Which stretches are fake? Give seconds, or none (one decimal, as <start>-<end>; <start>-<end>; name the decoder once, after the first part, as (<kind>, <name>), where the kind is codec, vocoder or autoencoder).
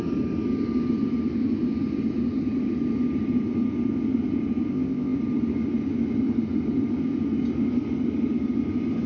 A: 4.7-5.2 (codec, ZipCodec)